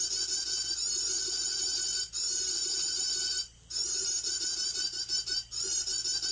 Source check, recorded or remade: recorded